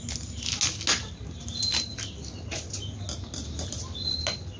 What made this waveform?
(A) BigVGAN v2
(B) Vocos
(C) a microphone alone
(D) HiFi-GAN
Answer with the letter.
C